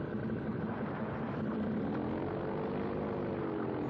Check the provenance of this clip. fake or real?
real